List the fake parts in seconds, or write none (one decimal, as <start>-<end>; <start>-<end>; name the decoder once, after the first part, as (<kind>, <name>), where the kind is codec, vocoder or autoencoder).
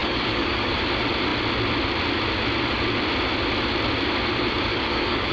0.0-0.7 (codec, DAC); 4.7-5.3